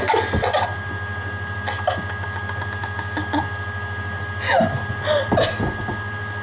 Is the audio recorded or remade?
recorded